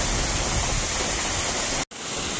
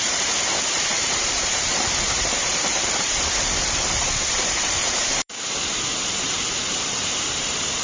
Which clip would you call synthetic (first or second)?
second